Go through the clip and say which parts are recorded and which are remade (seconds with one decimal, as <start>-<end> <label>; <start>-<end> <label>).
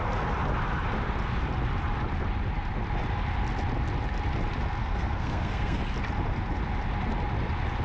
0.0-4.8 recorded; 4.8-5.8 remade; 5.8-7.8 recorded